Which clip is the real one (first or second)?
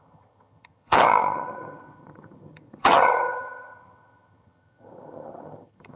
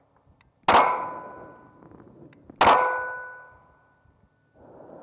second